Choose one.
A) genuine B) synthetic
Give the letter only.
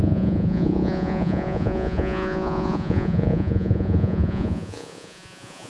B